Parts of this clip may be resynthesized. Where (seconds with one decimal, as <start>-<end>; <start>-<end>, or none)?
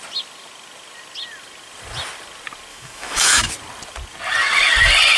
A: 2.7-3.5